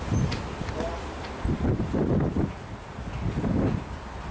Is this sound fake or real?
real